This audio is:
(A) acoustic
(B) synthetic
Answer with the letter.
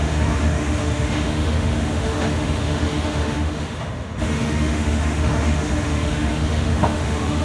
B